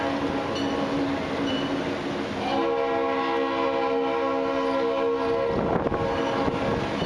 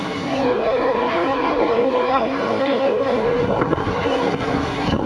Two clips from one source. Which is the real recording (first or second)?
first